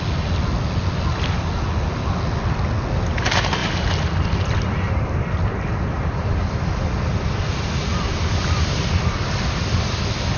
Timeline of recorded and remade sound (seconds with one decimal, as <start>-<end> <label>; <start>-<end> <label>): 0.0-10.4 recorded